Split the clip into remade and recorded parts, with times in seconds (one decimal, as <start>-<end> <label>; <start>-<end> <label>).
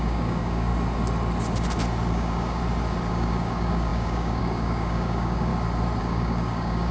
0.0-0.7 remade; 0.7-2.1 recorded; 2.1-2.6 remade; 2.6-3.1 recorded; 3.1-5.5 remade; 5.5-6.0 recorded; 6.0-6.9 remade